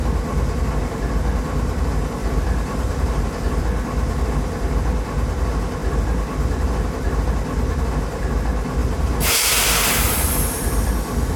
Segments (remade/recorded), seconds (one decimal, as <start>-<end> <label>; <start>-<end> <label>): 0.0-2.2 recorded; 2.2-3.6 remade; 3.6-8.8 recorded; 8.8-10.9 remade; 10.9-11.4 recorded